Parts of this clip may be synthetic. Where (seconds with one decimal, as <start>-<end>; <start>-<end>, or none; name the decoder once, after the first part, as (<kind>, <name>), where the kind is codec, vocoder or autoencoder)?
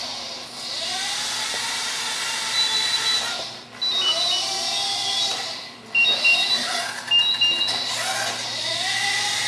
none